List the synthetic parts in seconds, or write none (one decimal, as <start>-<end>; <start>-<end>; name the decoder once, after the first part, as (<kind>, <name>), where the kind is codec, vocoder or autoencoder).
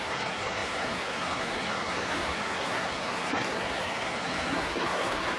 0.0-5.4 (codec, SNAC)